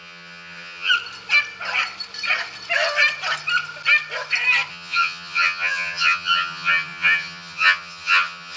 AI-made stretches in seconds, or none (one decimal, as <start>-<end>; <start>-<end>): 0.0-0.9; 4.7-8.6